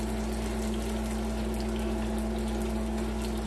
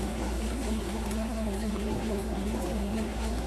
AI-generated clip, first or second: second